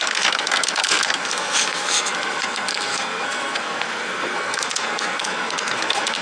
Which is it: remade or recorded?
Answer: remade